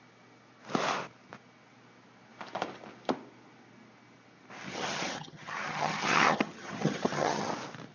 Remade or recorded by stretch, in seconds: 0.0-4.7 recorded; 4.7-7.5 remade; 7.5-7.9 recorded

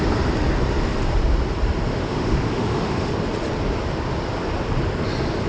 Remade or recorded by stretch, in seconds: 0.0-1.9 recorded; 1.9-3.1 remade; 3.1-5.5 recorded

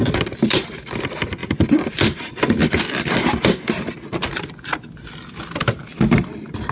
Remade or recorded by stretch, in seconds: 0.0-6.7 recorded

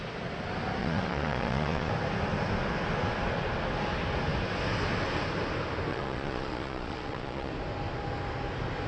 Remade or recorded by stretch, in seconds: 0.0-0.8 recorded; 0.8-1.9 remade; 1.9-5.9 recorded; 5.9-7.5 remade; 7.5-8.9 recorded

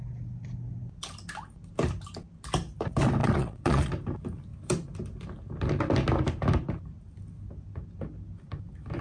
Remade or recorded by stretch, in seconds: 0.0-3.2 recorded; 3.2-3.9 remade; 3.9-9.0 recorded

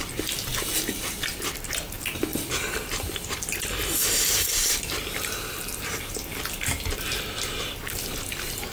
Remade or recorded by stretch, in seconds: 0.0-8.7 recorded